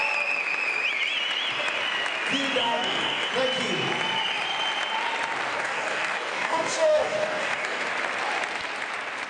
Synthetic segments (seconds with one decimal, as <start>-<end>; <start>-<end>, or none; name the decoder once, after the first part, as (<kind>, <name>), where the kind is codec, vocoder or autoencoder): 2.6-3.3 (codec, DAC); 5.5-7.9